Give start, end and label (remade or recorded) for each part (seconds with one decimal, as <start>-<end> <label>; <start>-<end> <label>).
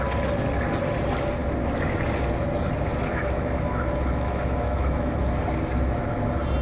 0.0-3.1 recorded; 3.1-5.2 remade; 5.2-6.6 recorded